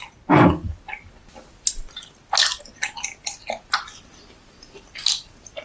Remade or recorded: recorded